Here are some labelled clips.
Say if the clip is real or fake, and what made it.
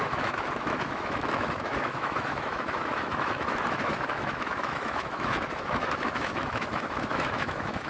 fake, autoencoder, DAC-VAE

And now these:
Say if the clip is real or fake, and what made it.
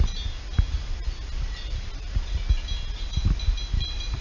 real